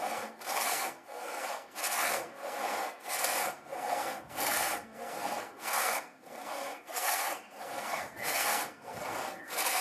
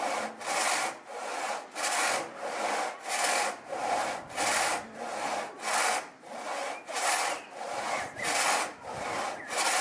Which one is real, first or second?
second